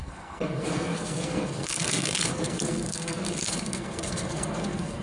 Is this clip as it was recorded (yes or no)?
no